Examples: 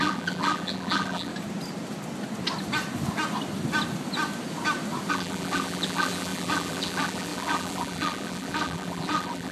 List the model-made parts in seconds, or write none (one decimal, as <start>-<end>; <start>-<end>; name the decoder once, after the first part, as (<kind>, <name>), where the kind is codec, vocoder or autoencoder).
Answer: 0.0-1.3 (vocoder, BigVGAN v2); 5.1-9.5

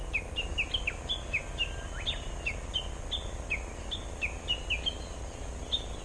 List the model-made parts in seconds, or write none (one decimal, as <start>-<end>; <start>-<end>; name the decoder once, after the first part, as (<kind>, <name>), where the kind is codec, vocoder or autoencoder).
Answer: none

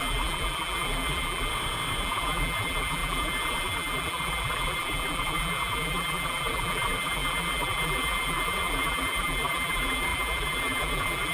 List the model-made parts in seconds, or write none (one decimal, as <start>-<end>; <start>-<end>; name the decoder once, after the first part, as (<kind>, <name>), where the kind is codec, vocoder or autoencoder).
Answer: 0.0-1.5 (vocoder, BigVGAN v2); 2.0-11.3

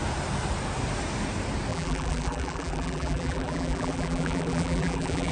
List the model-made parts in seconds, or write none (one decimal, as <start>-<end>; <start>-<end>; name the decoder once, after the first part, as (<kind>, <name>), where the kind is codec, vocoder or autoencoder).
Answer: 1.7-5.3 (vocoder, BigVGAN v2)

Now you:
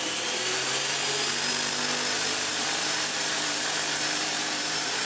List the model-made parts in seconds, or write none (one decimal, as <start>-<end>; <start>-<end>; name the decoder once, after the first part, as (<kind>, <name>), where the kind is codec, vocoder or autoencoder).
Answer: 2.5-5.0 (vocoder, BigVGAN v2)

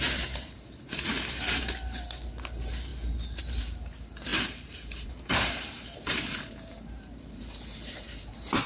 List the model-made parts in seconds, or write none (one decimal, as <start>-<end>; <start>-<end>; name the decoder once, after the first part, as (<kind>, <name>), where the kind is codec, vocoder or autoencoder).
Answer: 0.0-2.9 (vocoder, BigVGAN v2); 3.4-8.7

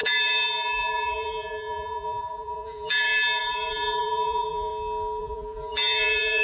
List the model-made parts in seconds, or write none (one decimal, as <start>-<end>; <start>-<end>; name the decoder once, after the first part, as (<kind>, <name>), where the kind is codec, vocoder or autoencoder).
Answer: 0.0-4.7 (vocoder, BigVGAN v2); 5.2-6.4

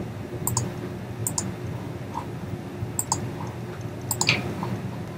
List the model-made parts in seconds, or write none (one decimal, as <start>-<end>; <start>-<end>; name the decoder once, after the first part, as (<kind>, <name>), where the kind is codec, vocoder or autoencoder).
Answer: none